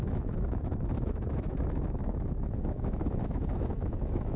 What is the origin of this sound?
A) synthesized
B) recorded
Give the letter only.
A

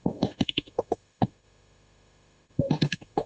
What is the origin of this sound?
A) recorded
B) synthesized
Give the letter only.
B